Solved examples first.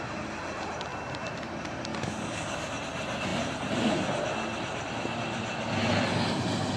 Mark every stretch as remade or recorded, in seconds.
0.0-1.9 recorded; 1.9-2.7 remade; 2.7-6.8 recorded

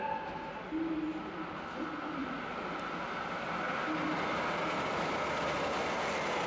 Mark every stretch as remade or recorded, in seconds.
0.0-6.5 recorded

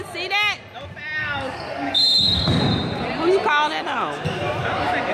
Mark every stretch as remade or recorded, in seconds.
0.0-1.2 recorded; 1.2-2.6 remade; 2.6-5.1 recorded

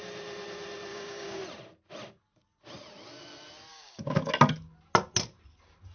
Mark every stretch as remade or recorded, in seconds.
0.0-0.9 recorded; 0.9-1.4 remade; 1.4-3.7 recorded; 3.7-4.3 remade; 4.3-5.9 recorded

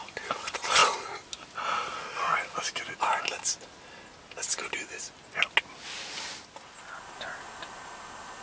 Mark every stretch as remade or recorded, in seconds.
0.0-8.4 recorded

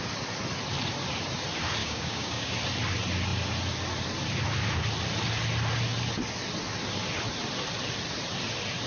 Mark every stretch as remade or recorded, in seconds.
0.0-1.8 recorded; 1.8-2.5 remade; 2.5-8.9 recorded

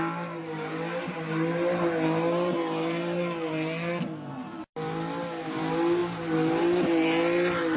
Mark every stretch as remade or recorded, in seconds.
0.0-7.8 recorded